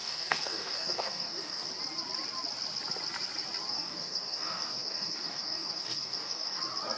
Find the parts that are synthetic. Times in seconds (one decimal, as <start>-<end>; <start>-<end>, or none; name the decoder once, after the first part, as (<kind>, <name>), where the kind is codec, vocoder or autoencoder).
0.0-1.7 (codec, DAC); 3.7-6.6